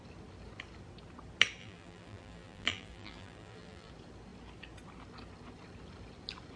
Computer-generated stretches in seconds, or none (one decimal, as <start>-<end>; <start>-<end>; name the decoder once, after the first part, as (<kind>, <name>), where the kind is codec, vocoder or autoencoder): 1.6-3.9 (vocoder, BigVGAN v2)